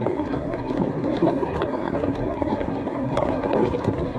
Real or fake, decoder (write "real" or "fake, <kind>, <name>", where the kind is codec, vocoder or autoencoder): fake, codec, SNAC